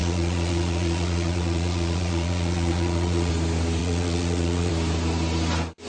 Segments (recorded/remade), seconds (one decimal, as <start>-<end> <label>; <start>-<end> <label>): 0.0-3.3 remade; 3.3-3.8 recorded; 3.8-4.7 remade; 4.7-5.9 recorded